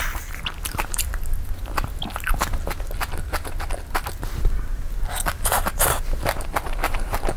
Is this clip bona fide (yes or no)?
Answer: yes